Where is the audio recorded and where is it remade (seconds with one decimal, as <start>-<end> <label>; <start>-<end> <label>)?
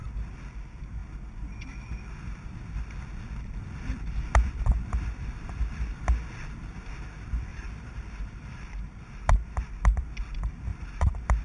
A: 0.0-7.5 recorded; 7.5-9.7 remade; 9.7-10.7 recorded; 10.7-11.4 remade